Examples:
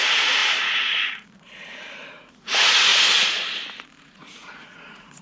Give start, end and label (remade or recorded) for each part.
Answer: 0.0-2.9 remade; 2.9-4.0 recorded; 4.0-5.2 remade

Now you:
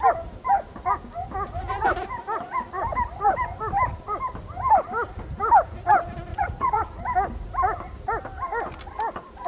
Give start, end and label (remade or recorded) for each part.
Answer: 0.0-6.3 recorded; 6.3-7.0 remade; 7.0-9.5 recorded

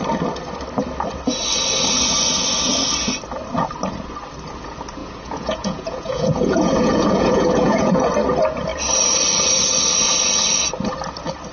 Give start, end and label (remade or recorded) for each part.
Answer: 0.0-5.0 recorded; 5.0-8.1 remade; 8.1-11.5 recorded

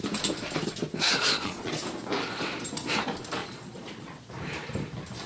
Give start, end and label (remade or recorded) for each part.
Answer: 0.0-1.2 recorded; 1.2-1.7 remade; 1.7-3.4 recorded; 3.4-4.3 remade; 4.3-5.3 recorded

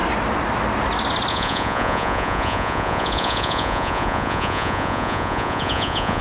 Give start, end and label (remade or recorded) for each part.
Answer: 0.0-1.3 recorded; 1.3-6.2 remade

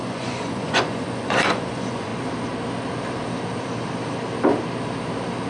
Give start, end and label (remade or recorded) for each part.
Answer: 0.0-2.1 remade; 2.1-5.5 recorded

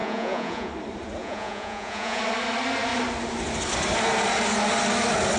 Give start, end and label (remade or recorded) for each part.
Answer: 0.0-0.7 remade; 0.7-1.2 recorded; 1.2-2.2 remade; 2.2-5.4 recorded

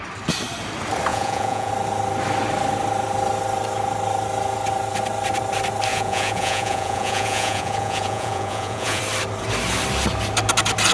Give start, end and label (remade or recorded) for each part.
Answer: 0.0-1.1 recorded; 1.1-1.7 remade; 1.7-5.9 recorded; 5.9-9.0 remade; 9.0-10.9 recorded